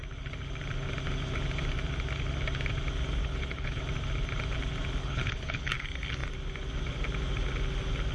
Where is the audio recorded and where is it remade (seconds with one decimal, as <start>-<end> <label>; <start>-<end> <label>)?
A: 0.0-3.2 recorded; 3.2-3.8 remade; 3.8-5.0 recorded; 5.0-5.7 remade; 5.7-8.1 recorded